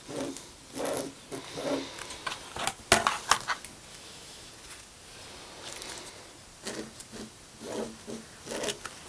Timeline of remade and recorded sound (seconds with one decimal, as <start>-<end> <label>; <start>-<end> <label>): 0.0-3.9 recorded; 3.9-4.5 remade; 4.5-9.1 recorded